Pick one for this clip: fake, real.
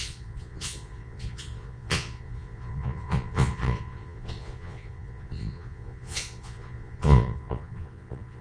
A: fake